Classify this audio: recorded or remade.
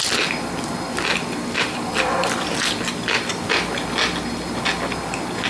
recorded